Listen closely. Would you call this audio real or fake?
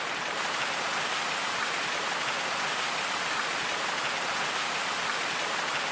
real